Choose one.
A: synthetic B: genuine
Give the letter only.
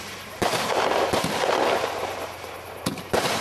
A